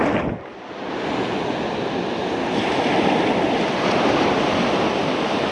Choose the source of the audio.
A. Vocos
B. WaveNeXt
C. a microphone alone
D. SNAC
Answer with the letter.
C